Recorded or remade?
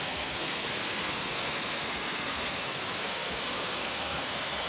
remade